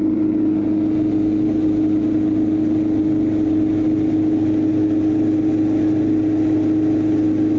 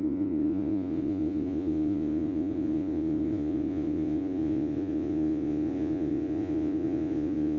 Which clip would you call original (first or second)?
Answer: first